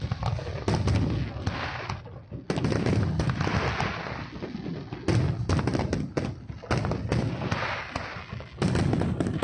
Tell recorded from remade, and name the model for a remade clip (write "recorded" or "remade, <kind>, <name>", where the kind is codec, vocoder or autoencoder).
recorded